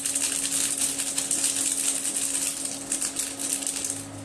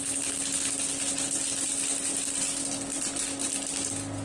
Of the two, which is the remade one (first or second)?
second